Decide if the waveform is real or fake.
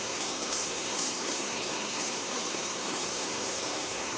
fake